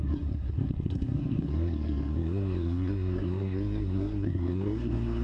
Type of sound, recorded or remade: remade